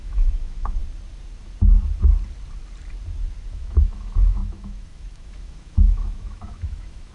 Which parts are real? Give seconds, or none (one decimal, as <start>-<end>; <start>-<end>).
0.8-3.5